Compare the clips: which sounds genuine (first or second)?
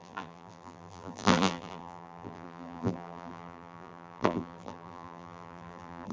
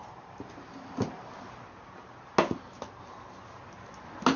second